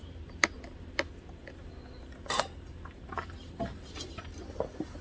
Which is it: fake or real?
real